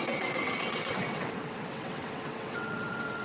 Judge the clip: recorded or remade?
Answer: remade